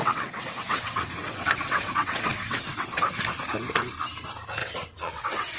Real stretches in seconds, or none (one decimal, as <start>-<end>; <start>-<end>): 3.1-4.6